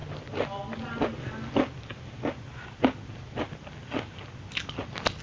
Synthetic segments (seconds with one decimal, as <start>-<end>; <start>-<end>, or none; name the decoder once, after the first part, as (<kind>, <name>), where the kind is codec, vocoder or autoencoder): none